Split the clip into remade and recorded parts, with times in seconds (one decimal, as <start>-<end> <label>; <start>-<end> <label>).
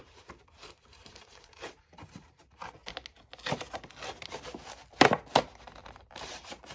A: 0.0-2.8 remade; 2.8-5.8 recorded; 5.8-6.7 remade